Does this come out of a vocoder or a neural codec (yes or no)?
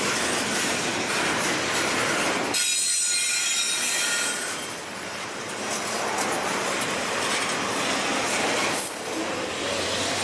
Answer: no